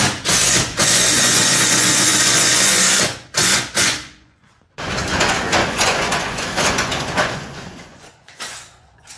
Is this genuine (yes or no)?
no